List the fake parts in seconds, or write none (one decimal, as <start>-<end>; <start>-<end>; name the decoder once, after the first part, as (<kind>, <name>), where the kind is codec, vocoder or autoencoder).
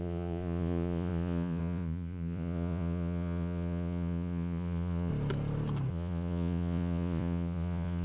0.0-5.1 (vocoder, Vocos); 5.9-8.0